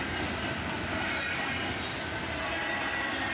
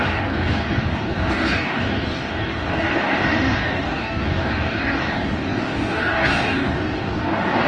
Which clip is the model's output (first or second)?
second